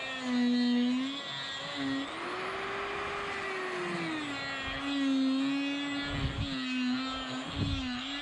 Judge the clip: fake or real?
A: real